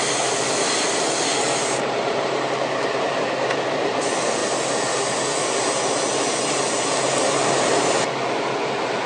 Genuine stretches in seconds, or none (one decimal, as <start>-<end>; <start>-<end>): 0.0-1.3; 2.5-9.1